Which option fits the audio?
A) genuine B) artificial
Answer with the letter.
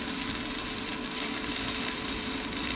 B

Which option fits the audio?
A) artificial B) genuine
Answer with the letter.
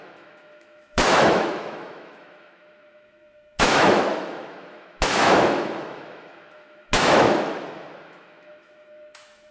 A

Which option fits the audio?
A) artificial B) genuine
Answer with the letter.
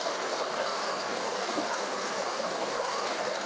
A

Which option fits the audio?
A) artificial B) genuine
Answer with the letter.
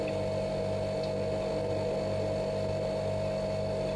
B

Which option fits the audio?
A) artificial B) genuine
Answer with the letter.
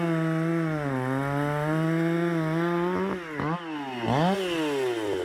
B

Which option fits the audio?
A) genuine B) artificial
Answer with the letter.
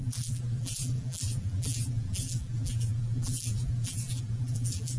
B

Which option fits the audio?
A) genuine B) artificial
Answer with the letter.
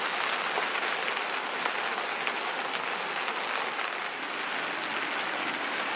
A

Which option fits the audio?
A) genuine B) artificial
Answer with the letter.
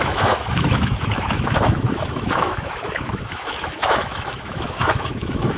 B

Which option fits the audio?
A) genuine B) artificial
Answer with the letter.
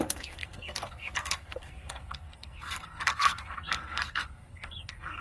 B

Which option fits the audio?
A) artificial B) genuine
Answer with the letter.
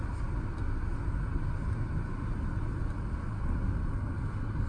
B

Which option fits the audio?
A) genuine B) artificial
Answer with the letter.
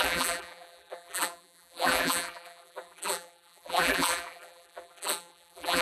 B